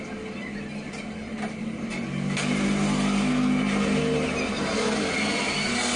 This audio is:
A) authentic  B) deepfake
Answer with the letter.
A